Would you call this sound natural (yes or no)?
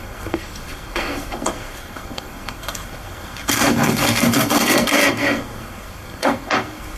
no